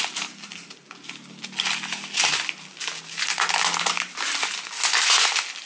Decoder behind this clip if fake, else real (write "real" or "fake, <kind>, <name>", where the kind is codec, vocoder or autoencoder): real